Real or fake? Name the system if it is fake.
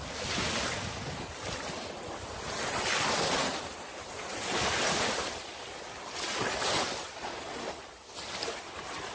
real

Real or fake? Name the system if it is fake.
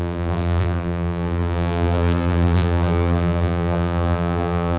fake, vocoder, BigVGAN v2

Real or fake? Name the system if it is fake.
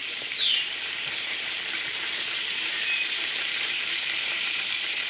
fake, vocoder, BigVGAN v2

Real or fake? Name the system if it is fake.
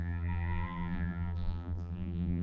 fake, vocoder, BigVGAN v2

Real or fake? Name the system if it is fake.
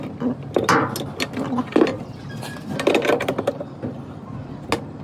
real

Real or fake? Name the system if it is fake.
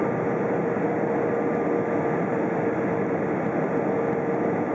real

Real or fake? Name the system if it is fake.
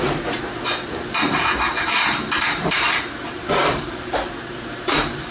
fake, vocoder, BigVGAN v2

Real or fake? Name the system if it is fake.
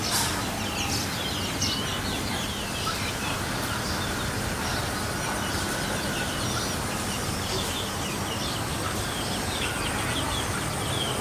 real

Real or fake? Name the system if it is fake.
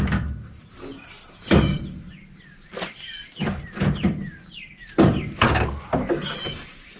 real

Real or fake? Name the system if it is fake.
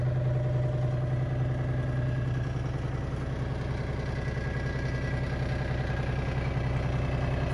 real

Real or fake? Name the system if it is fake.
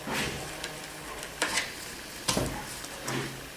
real